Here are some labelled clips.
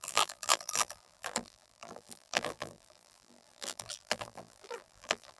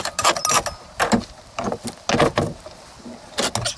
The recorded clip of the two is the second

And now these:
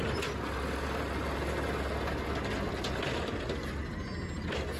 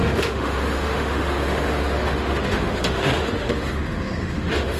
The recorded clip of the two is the first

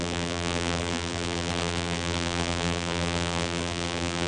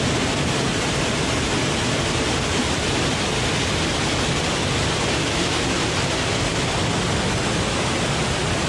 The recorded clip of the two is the second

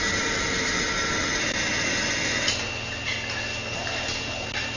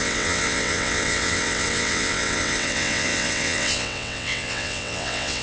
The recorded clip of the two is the first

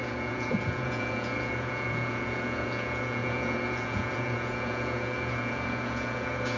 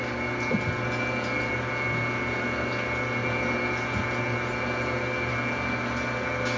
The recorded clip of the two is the second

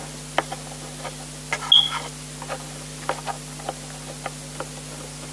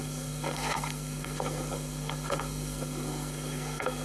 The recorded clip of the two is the first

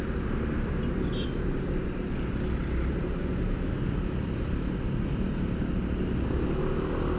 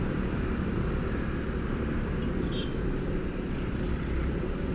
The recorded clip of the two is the first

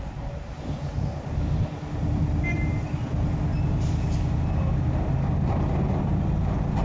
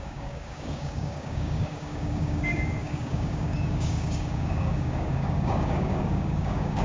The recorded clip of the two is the first